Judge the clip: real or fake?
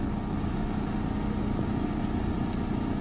real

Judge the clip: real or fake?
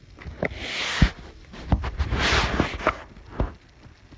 real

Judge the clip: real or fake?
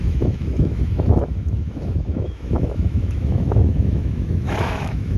fake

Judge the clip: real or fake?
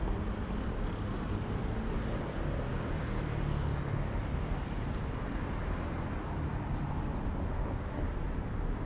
real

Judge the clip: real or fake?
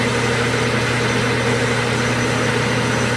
real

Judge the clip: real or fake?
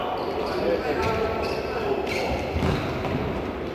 real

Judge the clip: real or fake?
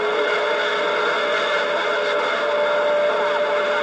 real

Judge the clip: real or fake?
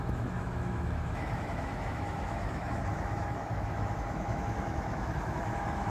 fake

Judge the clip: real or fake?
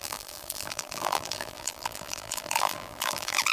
fake